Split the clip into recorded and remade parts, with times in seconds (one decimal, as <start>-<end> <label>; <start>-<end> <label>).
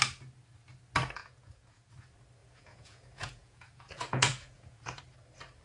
0.0-1.2 recorded; 1.2-1.9 remade; 1.9-2.4 recorded; 2.4-5.0 remade; 5.0-5.6 recorded